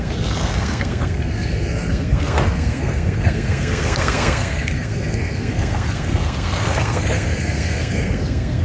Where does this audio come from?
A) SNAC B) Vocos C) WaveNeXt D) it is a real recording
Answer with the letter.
A